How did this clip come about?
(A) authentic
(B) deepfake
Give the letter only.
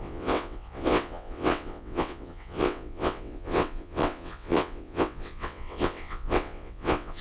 B